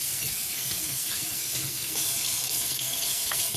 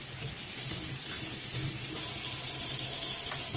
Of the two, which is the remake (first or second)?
first